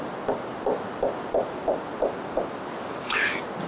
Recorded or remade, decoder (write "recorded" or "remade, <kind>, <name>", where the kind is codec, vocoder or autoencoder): recorded